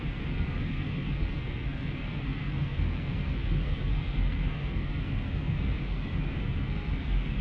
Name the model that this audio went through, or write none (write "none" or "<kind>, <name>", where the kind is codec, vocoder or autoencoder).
codec, SNAC